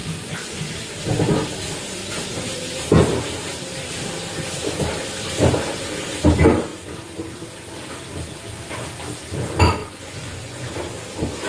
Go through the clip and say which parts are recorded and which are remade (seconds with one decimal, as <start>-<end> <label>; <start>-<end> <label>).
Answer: 0.0-0.7 remade; 0.7-9.8 recorded; 9.8-10.7 remade; 10.7-11.5 recorded